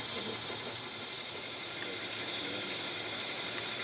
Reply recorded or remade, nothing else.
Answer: recorded